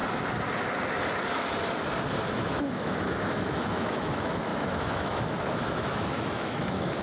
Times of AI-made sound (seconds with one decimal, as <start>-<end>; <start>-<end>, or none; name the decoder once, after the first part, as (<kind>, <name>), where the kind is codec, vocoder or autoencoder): 2.3-7.0 (autoencoder, DAC-VAE)